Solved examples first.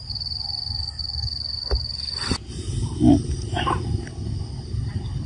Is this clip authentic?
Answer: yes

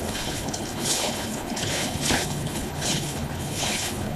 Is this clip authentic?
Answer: no